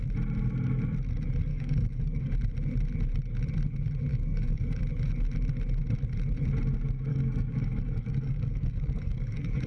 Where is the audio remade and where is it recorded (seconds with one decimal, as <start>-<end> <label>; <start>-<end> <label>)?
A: 0.0-1.5 recorded; 1.5-2.4 remade; 2.4-4.1 recorded; 4.1-4.8 remade; 4.8-7.1 recorded; 7.1-9.7 remade